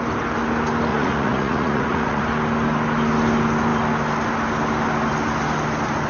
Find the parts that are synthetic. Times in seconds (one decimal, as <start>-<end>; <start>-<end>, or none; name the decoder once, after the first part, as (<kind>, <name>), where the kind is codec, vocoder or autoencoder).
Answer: 0.9-2.2 (vocoder, Vocos)